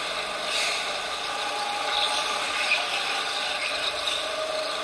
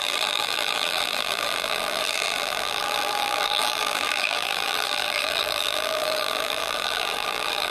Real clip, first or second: first